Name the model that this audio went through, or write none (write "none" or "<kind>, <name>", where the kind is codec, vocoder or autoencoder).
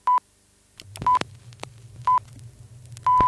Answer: none